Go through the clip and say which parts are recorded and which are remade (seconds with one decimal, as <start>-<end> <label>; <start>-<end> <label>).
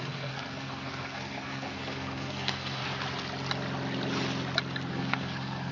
0.0-2.8 remade; 2.8-4.9 recorded; 4.9-5.7 remade